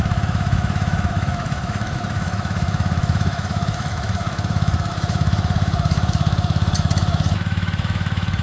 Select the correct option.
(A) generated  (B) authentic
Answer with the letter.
A